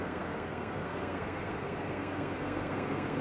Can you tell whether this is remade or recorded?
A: remade